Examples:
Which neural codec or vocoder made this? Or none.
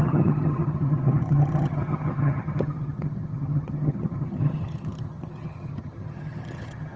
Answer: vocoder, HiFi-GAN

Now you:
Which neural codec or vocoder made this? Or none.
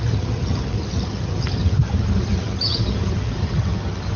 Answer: vocoder, HiFi-GAN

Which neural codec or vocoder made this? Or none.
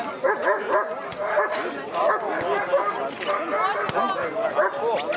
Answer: none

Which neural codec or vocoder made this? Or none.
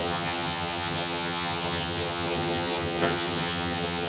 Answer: vocoder, HiFi-GAN